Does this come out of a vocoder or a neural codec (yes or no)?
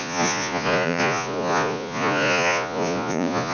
yes